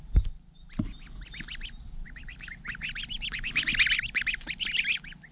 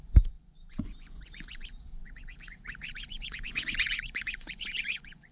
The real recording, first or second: first